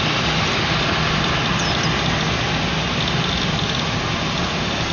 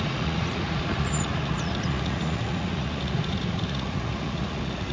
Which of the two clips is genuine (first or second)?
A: first